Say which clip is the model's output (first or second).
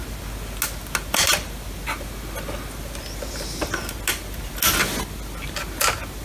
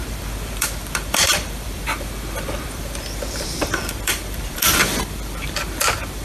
second